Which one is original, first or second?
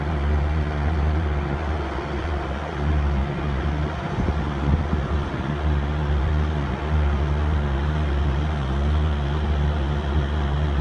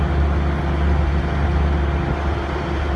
second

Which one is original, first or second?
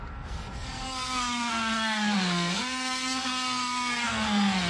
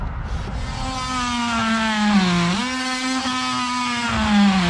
second